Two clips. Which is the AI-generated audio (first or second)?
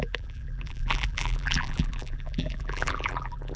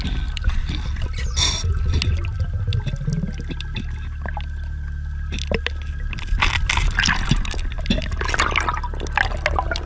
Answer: first